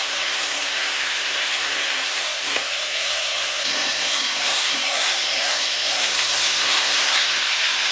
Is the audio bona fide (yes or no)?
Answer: no